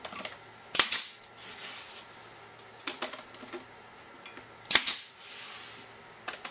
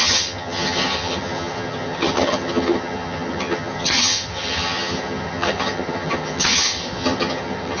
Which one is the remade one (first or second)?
second